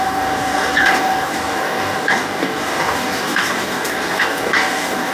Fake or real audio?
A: fake